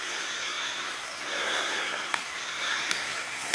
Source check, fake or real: fake